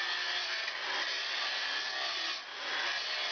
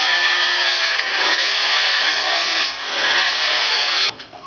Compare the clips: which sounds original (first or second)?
first